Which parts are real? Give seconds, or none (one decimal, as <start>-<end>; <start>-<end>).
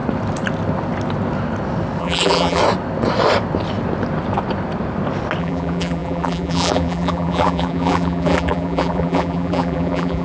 0.0-2.0; 2.6-5.4